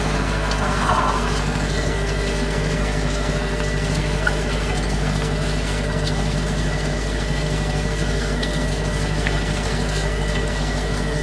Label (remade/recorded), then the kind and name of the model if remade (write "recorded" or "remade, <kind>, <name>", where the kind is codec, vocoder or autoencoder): remade, codec, SNAC